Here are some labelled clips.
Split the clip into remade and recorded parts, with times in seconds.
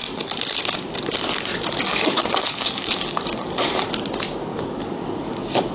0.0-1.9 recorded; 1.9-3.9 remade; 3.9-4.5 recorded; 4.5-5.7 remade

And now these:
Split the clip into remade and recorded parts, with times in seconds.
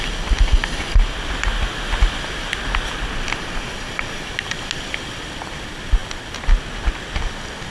0.0-7.7 recorded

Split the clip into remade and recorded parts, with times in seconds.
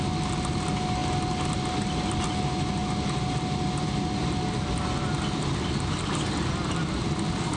0.0-7.6 recorded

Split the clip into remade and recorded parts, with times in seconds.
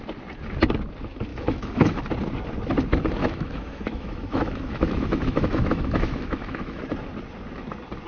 0.0-1.3 recorded; 1.3-2.0 remade; 2.0-3.2 recorded; 3.2-6.8 remade; 6.8-8.1 recorded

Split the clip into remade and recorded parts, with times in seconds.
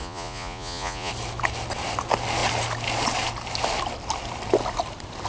0.0-1.1 remade; 1.1-5.3 recorded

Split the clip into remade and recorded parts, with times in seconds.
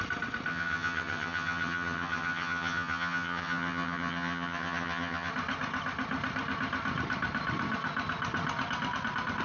0.0-0.5 recorded; 0.5-5.3 remade; 5.3-9.4 recorded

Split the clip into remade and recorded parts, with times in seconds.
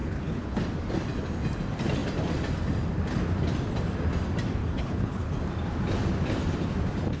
0.0-0.6 remade; 0.6-4.6 recorded; 4.6-5.4 remade; 5.4-7.2 recorded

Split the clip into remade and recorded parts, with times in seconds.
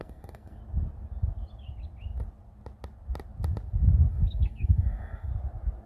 0.0-0.6 remade; 0.6-4.1 recorded; 4.1-5.3 remade; 5.3-5.9 recorded